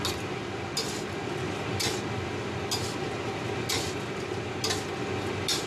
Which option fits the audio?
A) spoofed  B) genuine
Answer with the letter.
B